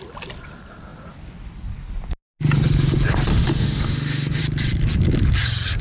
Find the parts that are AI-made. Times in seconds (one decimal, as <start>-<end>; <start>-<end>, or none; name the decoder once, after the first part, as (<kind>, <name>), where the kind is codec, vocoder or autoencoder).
3.3-4.4 (autoencoder, DAC-VAE)